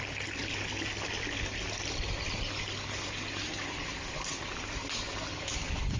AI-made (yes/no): no